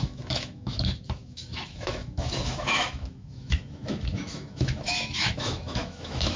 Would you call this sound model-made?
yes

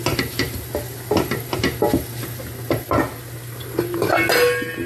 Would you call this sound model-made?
no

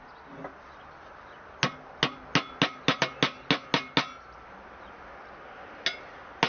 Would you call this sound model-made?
no